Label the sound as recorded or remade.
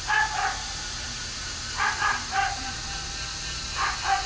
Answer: recorded